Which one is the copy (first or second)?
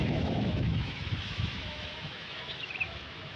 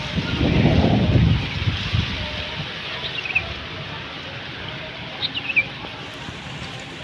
first